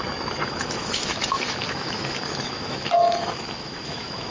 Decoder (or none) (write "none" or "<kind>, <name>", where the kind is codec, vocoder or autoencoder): autoencoder, DAC-VAE